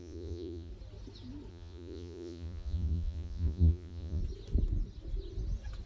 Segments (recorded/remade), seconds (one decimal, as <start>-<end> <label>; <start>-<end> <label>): 0.0-0.7 remade; 0.7-1.5 recorded; 1.5-4.2 remade; 4.2-5.9 recorded